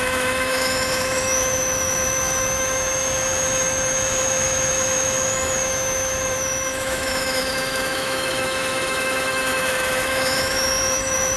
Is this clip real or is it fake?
fake